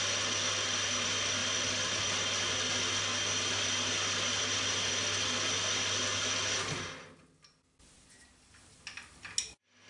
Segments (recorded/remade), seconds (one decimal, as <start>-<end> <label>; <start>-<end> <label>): 0.0-9.9 recorded